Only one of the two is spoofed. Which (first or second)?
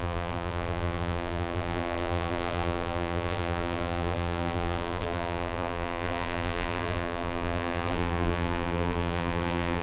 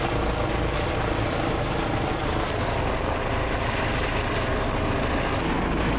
first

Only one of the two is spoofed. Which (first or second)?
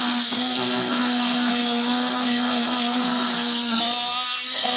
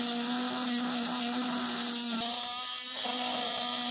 first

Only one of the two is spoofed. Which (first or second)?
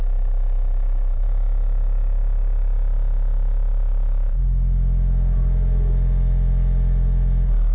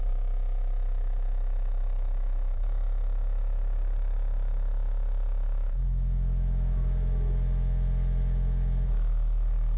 second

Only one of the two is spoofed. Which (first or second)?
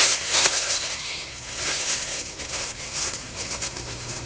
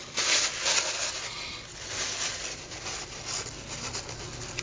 first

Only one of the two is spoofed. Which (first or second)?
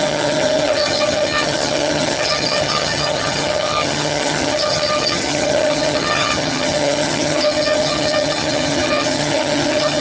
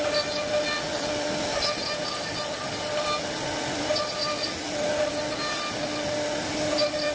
first